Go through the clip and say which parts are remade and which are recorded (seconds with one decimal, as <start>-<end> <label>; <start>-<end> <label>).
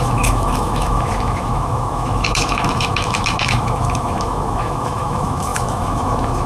0.0-6.5 remade